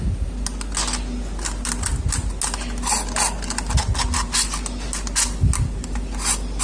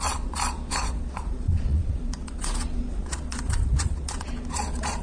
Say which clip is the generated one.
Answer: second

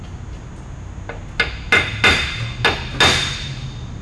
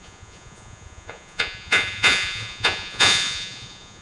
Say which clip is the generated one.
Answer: second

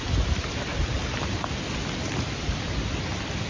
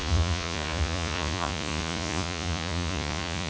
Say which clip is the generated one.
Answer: second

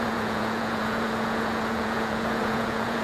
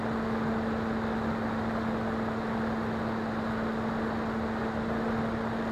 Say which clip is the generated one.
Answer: first